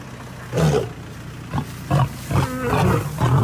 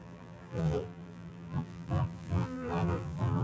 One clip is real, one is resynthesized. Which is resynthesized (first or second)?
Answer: second